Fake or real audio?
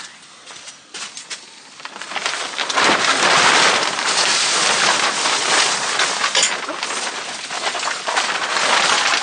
real